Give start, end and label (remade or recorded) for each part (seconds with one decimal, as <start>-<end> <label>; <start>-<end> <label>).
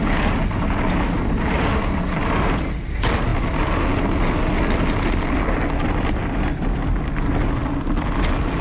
0.0-8.6 recorded